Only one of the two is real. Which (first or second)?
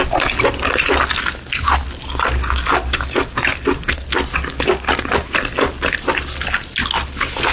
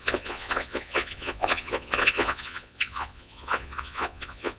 first